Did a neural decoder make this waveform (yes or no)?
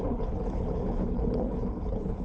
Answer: yes